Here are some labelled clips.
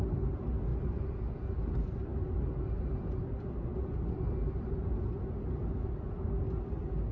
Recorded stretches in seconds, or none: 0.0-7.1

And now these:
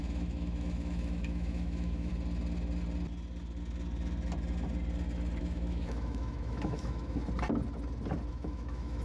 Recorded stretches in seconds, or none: 2.1-5.4; 7.2-8.3

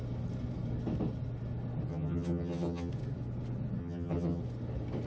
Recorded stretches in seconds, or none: 0.0-1.9; 2.9-3.8; 4.4-5.1

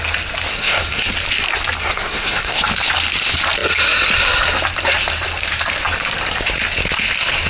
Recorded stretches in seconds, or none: 0.0-0.5; 1.1-1.8; 2.6-7.5